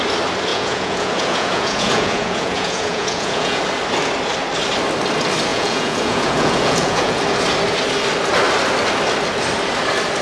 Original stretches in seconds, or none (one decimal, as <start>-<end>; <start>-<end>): 0.0-0.5; 3.6-5.5; 7.2-10.2

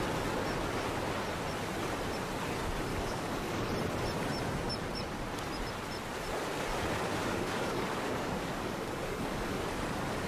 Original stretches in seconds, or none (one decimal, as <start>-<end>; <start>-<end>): 0.0-2.9; 3.7-7.2; 9.6-10.3

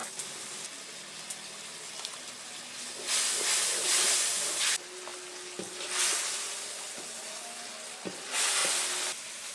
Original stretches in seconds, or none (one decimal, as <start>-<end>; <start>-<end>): 0.0-9.5